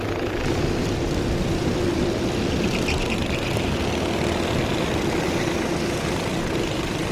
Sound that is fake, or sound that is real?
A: real